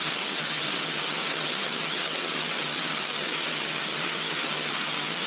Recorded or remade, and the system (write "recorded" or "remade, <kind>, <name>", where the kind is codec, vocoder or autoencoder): remade, vocoder, HiFi-GAN